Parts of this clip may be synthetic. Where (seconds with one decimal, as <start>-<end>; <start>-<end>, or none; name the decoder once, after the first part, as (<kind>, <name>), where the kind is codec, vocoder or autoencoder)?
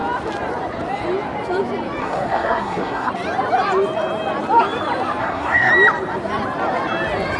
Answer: 2.0-3.1 (codec, SNAC); 5.2-5.7